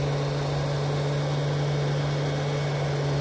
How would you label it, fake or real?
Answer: real